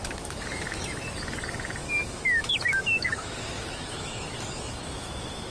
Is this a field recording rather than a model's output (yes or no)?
no